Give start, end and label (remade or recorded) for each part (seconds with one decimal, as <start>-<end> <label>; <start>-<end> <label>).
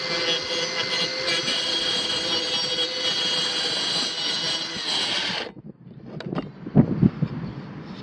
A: 0.0-1.1 recorded; 1.1-2.5 remade; 2.5-8.0 recorded